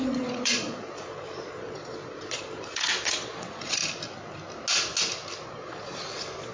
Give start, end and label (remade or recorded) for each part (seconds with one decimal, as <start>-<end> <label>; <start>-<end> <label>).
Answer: 0.0-3.8 remade; 3.8-5.5 recorded; 5.5-6.5 remade